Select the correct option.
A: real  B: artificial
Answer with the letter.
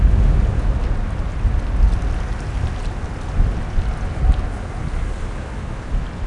A